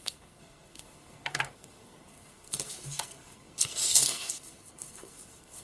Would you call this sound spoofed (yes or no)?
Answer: yes